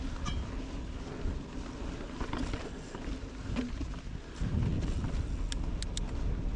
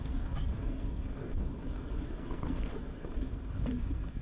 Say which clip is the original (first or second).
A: first